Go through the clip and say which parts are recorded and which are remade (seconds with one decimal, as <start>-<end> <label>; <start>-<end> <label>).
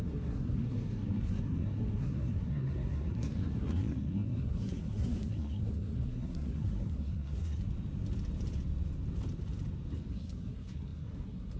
0.0-7.6 remade; 7.6-10.1 recorded; 10.1-11.6 remade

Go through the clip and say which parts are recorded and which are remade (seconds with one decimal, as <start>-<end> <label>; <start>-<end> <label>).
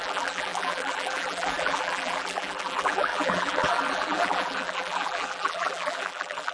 0.0-6.5 remade